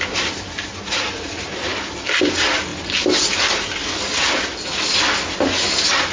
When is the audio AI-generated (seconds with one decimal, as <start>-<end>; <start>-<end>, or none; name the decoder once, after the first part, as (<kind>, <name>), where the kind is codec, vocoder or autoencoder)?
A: 0.7-1.3 (vocoder, Vocos)